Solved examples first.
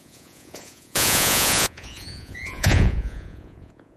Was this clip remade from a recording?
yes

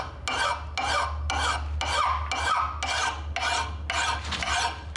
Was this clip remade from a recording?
no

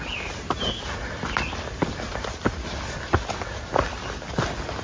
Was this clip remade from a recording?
no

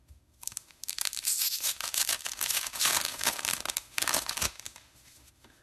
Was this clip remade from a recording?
yes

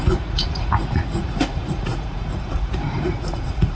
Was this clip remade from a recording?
yes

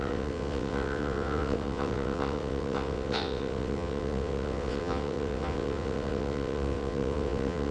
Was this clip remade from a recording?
yes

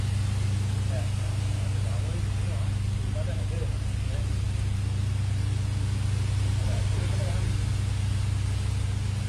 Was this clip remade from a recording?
no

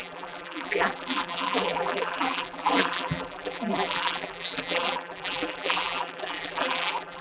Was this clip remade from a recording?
yes